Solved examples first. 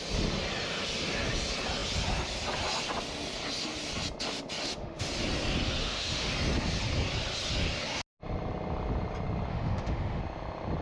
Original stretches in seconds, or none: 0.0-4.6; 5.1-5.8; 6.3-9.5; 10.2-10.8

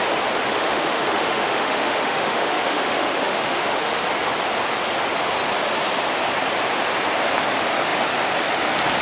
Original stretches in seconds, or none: 0.0-0.4; 4.0-9.0

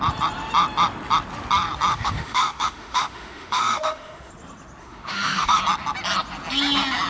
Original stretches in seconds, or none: 0.0-1.9; 4.3-4.8; 5.6-7.1

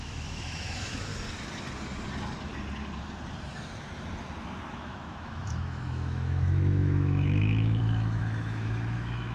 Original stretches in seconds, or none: 1.1-4.7

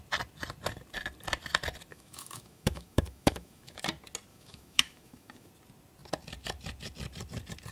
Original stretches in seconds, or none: 0.0-1.9; 3.8-4.3; 5.5-7.7